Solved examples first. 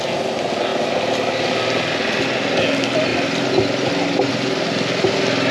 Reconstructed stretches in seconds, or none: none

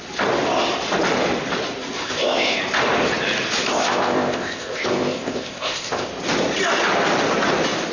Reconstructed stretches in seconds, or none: 2.0-2.6 (codec, ZipCodec); 3.7-6.1

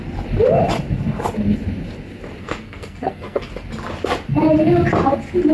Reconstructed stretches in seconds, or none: 2.4-3.5 (codec, SNAC)